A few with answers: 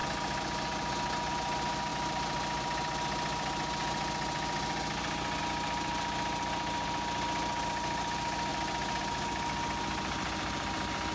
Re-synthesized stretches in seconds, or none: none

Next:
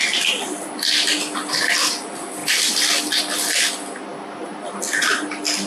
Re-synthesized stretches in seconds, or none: none

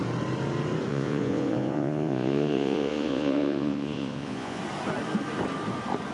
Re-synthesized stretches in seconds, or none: 0.9-4.6 (vocoder, Vocos)

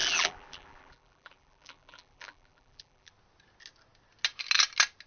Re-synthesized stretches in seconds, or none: 0.0-3.1 (vocoder, BigVGAN v2)

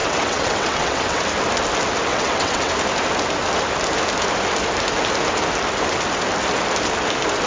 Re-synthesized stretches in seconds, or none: 0.0-1.2 (vocoder, WaveNeXt); 2.1-2.7

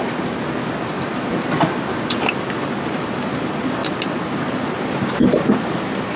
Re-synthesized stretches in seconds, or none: none

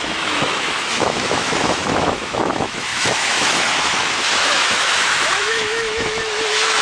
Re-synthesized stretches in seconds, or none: 0.0-6.8 (autoencoder, DAC-VAE)